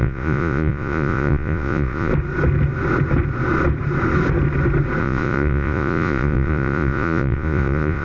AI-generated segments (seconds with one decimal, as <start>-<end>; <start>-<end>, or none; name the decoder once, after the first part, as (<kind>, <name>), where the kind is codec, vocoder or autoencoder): 0.0-2.1 (vocoder, Vocos); 5.0-8.0